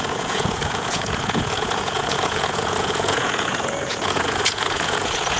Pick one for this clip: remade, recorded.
remade